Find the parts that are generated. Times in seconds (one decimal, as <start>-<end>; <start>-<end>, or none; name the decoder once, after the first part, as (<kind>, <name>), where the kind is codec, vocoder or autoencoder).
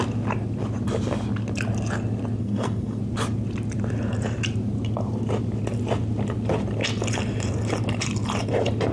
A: 2.4-3.0 (codec, SNAC)